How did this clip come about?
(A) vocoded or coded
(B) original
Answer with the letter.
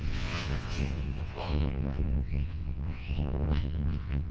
A